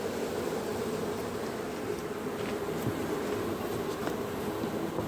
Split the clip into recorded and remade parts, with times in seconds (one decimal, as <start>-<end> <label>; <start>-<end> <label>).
0.0-5.1 recorded